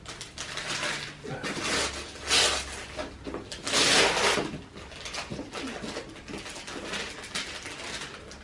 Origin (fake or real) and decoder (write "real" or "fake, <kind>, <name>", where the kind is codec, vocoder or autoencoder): real